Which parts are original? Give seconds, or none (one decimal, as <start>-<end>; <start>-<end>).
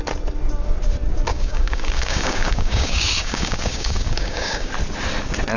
0.0-1.3; 4.7-5.6